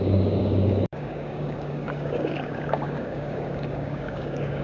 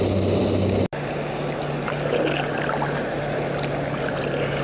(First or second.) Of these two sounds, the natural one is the second